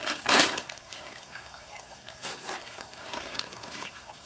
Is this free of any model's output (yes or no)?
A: no